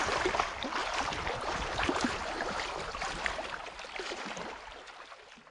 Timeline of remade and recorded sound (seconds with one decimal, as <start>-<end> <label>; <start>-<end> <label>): 0.0-5.5 remade

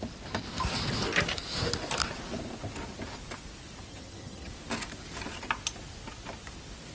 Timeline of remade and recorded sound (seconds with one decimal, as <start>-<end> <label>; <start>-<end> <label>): 0.0-3.9 recorded; 3.9-4.5 remade; 4.5-6.9 recorded

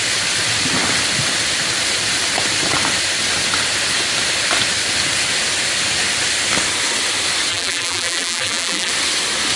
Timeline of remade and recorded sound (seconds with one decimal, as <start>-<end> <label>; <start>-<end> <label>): 0.0-7.5 recorded; 7.5-8.9 remade; 8.9-9.6 recorded

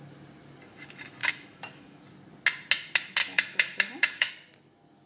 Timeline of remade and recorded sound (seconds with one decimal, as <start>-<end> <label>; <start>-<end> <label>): 0.0-1.2 recorded; 1.2-2.0 remade; 2.0-3.2 recorded; 3.2-4.3 remade; 4.3-5.1 recorded

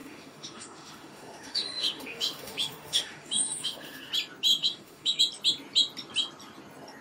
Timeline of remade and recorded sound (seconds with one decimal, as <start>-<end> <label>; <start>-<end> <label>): 0.0-4.1 remade; 4.1-4.5 recorded; 4.5-5.2 remade; 5.2-7.0 recorded

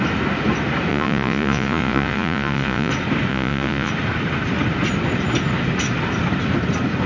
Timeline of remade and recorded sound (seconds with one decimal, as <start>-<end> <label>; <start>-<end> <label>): 0.0-0.9 recorded; 0.9-2.9 remade; 2.9-3.3 recorded; 3.3-3.9 remade; 3.9-7.1 recorded